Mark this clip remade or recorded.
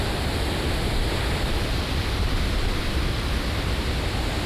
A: recorded